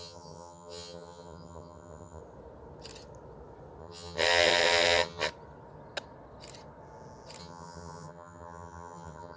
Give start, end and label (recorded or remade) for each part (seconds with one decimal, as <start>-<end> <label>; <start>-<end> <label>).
0.0-2.2 remade; 2.2-3.8 recorded; 3.8-5.3 remade; 5.3-7.4 recorded; 7.4-9.4 remade